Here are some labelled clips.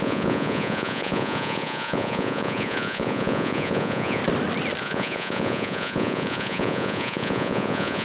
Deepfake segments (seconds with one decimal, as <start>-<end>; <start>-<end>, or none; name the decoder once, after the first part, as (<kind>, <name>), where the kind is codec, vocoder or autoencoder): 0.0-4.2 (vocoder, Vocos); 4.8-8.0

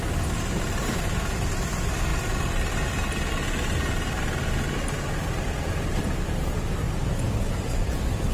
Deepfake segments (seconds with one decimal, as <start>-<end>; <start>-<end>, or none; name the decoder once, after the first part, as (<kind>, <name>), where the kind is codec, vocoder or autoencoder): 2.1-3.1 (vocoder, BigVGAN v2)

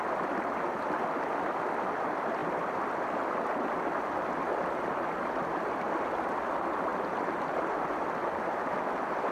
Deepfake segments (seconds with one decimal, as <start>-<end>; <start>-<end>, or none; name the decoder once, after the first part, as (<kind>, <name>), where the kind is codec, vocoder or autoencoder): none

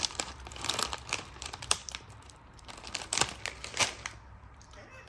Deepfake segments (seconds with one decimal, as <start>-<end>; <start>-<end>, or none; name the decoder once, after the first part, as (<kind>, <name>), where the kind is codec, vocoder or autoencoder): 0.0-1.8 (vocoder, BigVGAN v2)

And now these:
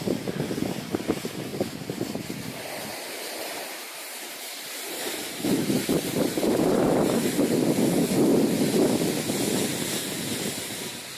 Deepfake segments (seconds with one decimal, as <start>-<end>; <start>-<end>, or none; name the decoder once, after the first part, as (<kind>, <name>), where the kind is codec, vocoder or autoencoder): 2.9-7.2 (vocoder, BigVGAN v2)

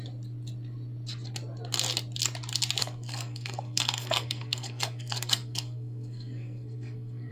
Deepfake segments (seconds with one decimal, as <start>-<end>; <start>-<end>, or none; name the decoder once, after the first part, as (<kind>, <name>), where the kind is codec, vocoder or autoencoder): 2.8-7.3 (codec, SNAC)

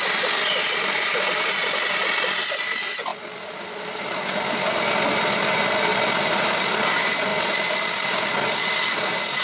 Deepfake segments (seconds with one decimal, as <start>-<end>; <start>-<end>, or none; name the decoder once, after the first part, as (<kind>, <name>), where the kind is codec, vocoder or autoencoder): 3.1-4.0 (vocoder, BigVGAN v2); 7.3-8.3